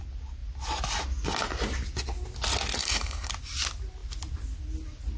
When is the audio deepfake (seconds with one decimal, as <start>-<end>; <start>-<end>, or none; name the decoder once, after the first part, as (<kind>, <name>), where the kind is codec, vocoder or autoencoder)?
2.8-3.3 (codec, HILCodec)